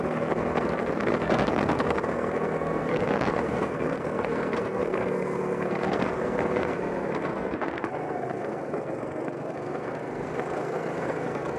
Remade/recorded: remade